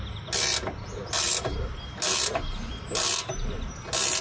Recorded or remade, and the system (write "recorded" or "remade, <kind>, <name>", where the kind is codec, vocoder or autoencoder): recorded